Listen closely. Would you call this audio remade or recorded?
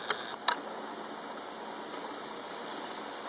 recorded